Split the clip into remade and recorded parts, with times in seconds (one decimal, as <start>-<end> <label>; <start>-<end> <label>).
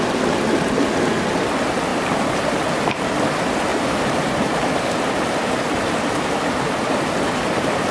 0.0-1.9 recorded; 1.9-2.4 remade; 2.4-3.7 recorded; 3.7-4.5 remade; 4.5-7.9 recorded